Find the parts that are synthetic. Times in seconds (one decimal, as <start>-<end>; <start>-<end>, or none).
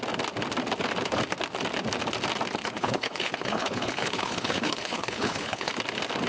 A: 2.6-5.7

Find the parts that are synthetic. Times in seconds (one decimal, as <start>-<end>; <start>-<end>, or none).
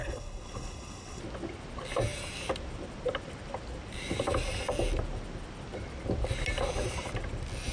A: 0.0-1.2